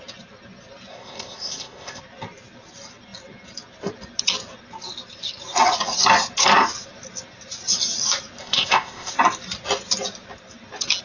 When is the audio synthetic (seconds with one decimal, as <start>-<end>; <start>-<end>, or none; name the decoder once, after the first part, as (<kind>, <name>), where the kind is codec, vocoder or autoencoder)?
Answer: 0.9-2.0 (codec, ZipCodec); 8.4-9.1